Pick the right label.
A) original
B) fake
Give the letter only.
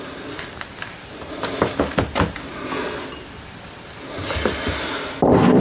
A